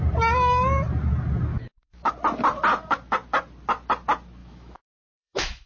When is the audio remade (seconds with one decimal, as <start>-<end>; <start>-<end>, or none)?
1.5-2.1; 4.4-5.7